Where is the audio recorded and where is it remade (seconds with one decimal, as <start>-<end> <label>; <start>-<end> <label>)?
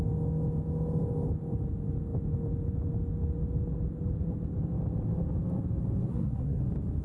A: 0.0-6.1 recorded; 6.1-6.6 remade; 6.6-7.0 recorded